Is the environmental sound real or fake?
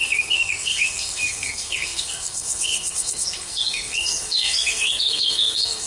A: fake